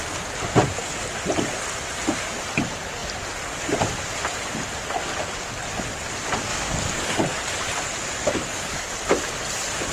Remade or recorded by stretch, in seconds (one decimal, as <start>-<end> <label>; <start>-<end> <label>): 0.0-6.5 recorded; 6.5-7.2 remade; 7.2-8.2 recorded; 8.2-8.9 remade; 8.9-9.9 recorded

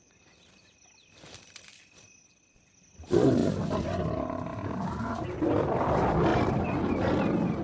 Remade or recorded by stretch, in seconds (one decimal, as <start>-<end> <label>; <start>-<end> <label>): 0.0-4.5 recorded; 4.5-5.4 remade; 5.4-7.6 recorded

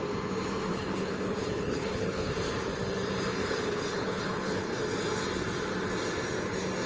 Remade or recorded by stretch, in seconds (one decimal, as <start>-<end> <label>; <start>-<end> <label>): 0.0-0.7 recorded; 0.7-2.3 remade; 2.3-3.3 recorded; 3.3-4.8 remade; 4.8-6.9 recorded

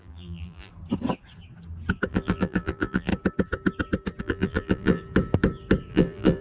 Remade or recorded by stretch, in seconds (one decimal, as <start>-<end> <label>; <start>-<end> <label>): 0.0-0.7 remade; 0.7-2.1 recorded; 2.1-3.1 remade; 3.1-4.2 recorded; 4.2-5.0 remade; 5.0-5.9 recorded; 5.9-6.4 remade